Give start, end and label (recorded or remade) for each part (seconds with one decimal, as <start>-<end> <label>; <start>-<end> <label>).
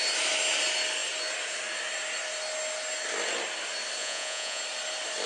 0.0-4.0 recorded; 4.0-4.6 remade; 4.6-5.3 recorded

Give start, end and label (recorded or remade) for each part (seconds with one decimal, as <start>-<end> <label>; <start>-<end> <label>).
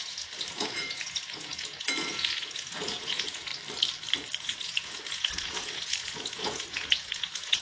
0.0-3.5 remade; 3.5-4.4 recorded; 4.4-7.6 remade